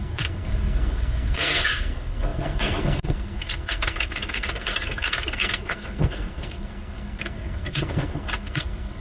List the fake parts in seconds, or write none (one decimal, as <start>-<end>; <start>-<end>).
0.0-9.0

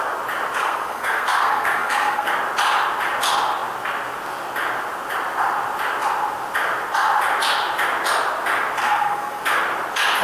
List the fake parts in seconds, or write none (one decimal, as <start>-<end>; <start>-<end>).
0.6-2.3; 8.8-9.4

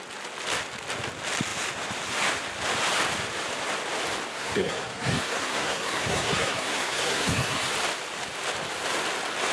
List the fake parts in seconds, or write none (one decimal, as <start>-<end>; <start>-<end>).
4.3-7.7

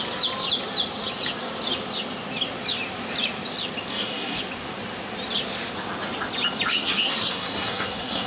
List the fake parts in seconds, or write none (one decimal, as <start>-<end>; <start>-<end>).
3.9-4.4; 6.7-8.3

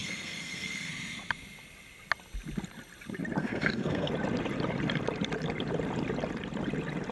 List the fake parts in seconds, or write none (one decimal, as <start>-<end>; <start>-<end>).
0.0-0.9; 3.4-4.1